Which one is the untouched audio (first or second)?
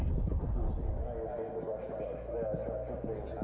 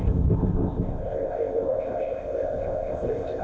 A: first